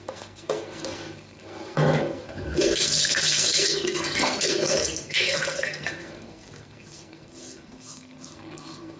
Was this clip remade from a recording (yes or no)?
yes